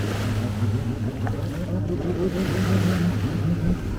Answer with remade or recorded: recorded